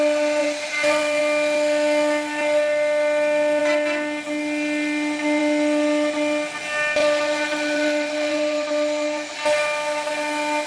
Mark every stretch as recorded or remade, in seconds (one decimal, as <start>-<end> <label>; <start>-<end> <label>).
0.0-0.4 recorded; 0.4-1.2 remade; 1.2-7.0 recorded; 7.0-9.3 remade; 9.3-10.7 recorded